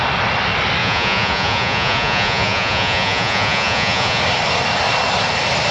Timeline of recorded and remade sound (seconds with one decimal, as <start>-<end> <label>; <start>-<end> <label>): 0.0-0.8 recorded; 0.8-4.2 remade; 4.2-5.7 recorded